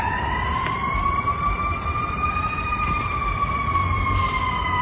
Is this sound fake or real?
fake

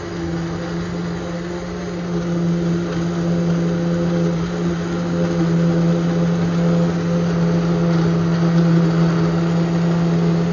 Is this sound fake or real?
real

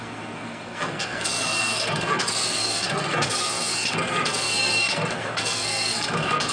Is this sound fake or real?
fake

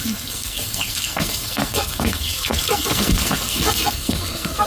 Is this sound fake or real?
fake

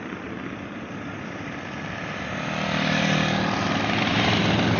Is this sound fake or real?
real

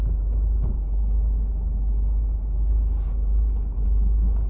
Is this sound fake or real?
real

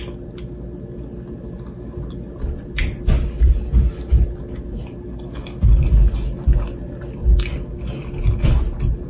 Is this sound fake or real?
real